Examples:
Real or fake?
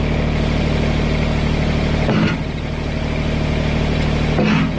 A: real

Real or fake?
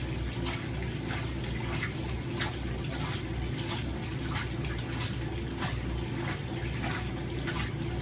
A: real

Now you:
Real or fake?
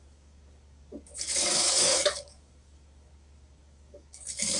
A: fake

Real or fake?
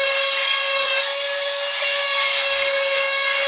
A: fake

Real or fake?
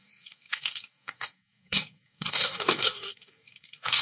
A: fake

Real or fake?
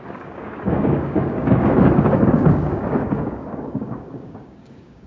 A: fake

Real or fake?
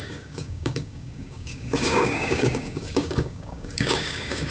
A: fake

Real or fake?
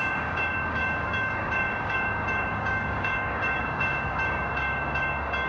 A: fake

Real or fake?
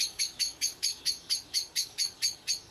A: fake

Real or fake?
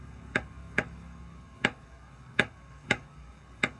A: fake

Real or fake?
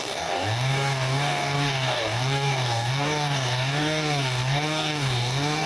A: fake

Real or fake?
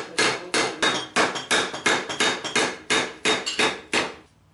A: real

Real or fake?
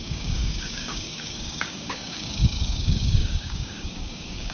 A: fake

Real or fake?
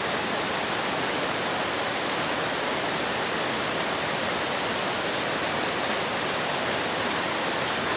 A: real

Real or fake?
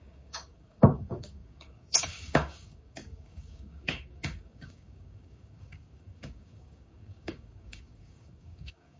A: fake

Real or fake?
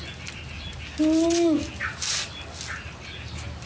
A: real